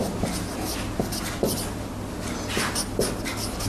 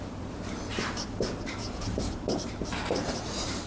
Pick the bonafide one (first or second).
first